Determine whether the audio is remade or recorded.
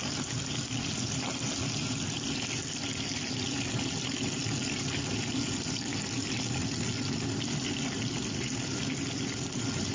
recorded